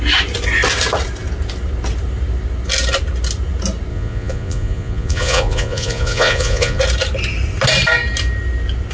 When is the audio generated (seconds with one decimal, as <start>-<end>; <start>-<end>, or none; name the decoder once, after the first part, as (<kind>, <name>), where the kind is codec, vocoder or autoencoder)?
3.9-6.8 (vocoder, Vocos)